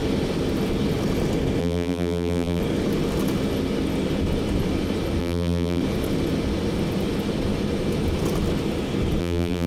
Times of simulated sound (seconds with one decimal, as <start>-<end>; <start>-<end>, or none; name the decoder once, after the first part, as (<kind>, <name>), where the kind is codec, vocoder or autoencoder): 1.6-2.6 (vocoder, BigVGAN v2); 5.2-5.8; 9.2-9.7